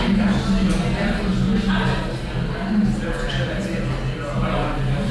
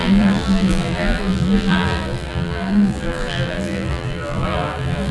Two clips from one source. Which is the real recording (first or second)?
first